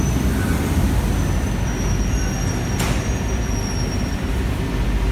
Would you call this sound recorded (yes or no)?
yes